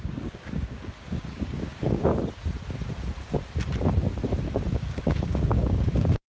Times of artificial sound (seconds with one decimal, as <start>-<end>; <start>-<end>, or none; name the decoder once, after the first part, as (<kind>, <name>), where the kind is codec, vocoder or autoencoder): 0.0-2.1 (codec, DAC); 4.7-6.3